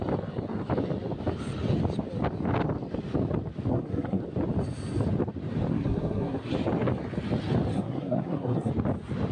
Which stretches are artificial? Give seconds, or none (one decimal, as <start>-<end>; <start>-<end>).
3.7-4.2; 5.7-6.5; 7.7-8.7